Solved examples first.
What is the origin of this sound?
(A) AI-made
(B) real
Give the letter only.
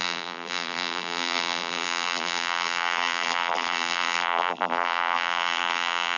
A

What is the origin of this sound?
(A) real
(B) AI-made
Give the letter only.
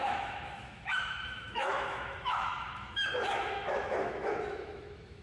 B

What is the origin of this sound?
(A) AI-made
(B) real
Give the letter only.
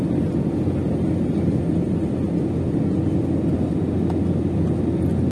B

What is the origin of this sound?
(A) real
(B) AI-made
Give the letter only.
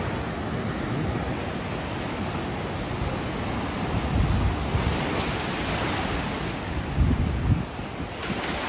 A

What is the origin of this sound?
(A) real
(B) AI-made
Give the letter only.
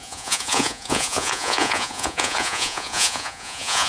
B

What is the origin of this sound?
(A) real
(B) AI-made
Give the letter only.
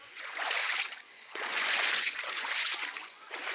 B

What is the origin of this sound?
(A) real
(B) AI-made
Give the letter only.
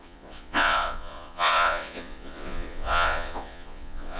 B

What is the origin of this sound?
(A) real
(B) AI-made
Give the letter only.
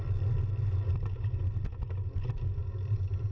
A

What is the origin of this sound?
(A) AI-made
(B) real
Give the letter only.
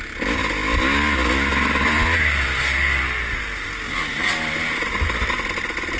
B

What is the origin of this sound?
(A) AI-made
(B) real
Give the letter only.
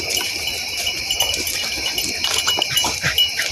A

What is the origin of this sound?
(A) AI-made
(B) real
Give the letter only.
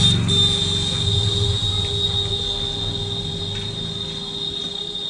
B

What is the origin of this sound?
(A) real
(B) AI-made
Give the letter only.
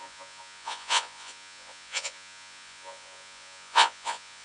B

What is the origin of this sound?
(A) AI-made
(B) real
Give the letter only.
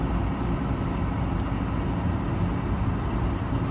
B